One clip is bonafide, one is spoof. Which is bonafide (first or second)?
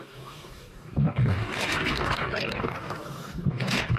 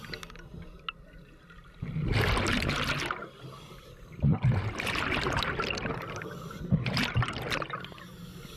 second